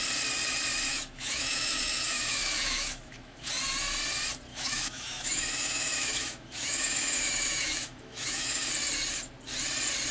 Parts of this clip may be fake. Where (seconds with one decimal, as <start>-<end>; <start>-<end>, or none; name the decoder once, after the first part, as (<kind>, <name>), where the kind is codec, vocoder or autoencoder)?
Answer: 0.9-3.5 (autoencoder, DAC-VAE); 4.5-8.7